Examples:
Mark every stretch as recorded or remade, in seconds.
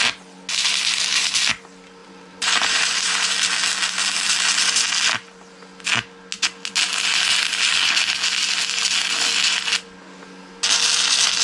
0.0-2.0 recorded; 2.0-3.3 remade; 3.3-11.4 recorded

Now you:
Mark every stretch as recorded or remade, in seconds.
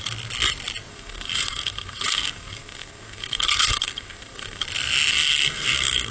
0.0-0.9 recorded; 0.9-4.6 remade; 4.6-5.1 recorded; 5.1-6.1 remade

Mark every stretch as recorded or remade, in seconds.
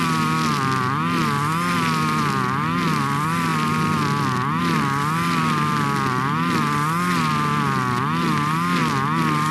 0.0-9.5 recorded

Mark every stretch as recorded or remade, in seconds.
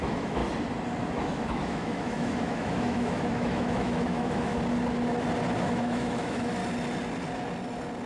0.0-0.4 remade; 0.4-1.0 recorded; 1.0-4.5 remade; 4.5-5.6 recorded; 5.6-6.6 remade; 6.6-8.1 recorded